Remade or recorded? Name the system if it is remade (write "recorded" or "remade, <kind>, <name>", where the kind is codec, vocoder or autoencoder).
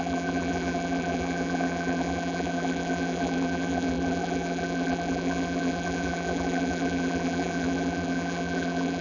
remade, vocoder, BigVGAN v2